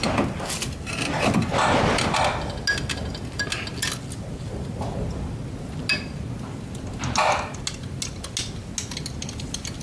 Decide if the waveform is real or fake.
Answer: real